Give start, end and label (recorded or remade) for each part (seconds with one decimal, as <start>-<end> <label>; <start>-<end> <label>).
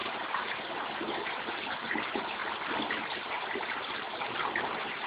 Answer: 0.0-2.4 recorded; 2.4-4.5 remade; 4.5-5.1 recorded